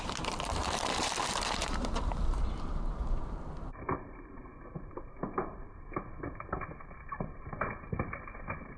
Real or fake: fake